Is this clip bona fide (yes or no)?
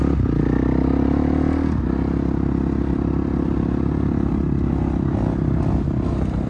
yes